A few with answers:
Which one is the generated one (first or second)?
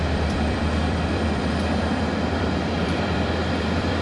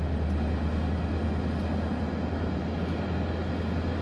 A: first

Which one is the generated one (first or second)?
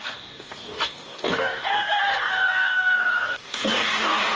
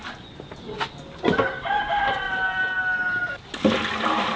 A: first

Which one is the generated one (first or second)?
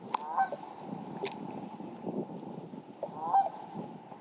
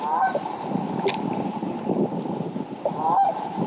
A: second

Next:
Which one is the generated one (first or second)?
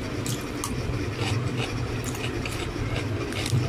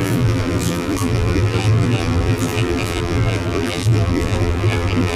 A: second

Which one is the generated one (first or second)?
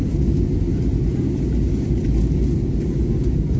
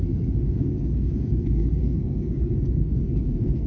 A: second